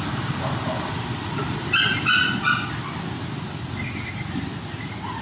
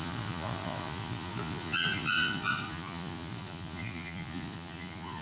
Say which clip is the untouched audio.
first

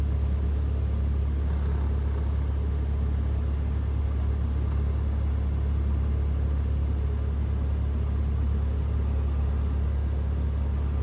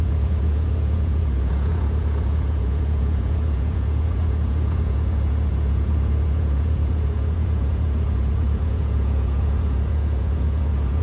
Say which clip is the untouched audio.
first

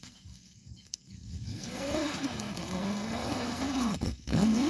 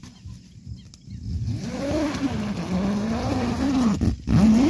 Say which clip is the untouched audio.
second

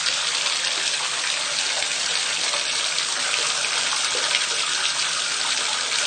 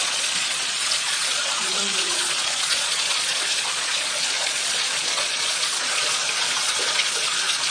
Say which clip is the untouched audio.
first